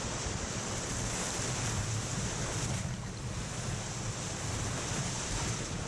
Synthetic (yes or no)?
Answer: yes